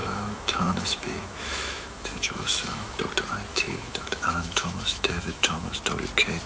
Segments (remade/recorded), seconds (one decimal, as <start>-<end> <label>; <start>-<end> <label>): 0.0-3.0 remade; 3.0-3.5 recorded; 3.5-5.8 remade; 5.8-6.5 recorded